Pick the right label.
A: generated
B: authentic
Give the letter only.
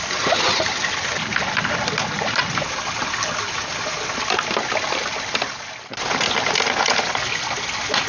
B